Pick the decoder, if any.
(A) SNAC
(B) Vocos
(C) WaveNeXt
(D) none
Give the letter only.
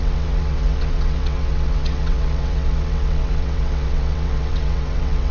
C